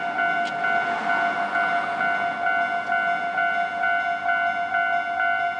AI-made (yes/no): no